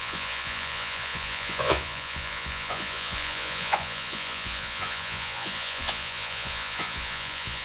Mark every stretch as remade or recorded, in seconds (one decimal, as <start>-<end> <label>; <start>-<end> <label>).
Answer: 0.0-7.6 remade